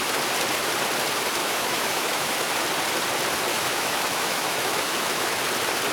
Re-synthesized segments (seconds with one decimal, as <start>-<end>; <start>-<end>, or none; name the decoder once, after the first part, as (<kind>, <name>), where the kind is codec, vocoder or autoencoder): 1.4-2.5 (autoencoder, DAC-VAE); 3.5-5.4